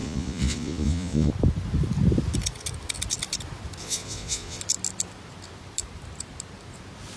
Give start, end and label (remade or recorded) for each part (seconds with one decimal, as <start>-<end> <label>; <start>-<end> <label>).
0.0-1.3 remade; 1.3-3.8 recorded; 3.8-4.6 remade; 4.6-7.2 recorded